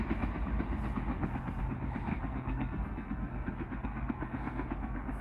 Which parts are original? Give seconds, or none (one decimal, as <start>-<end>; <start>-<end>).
0.0-1.1; 1.6-2.1